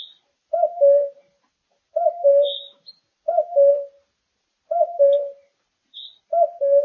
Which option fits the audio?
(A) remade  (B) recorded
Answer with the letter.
B